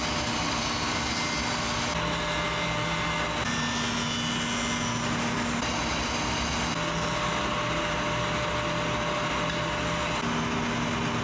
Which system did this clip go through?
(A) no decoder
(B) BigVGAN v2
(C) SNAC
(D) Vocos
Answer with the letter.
A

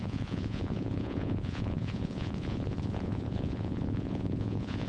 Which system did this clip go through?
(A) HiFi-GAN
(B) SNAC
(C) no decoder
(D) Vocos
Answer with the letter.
D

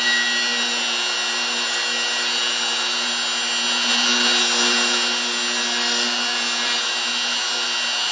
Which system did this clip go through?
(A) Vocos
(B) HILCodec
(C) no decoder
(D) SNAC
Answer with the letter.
C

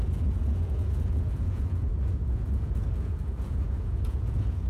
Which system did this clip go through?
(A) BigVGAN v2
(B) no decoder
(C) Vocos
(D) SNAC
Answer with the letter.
C